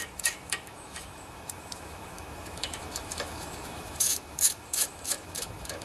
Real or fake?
fake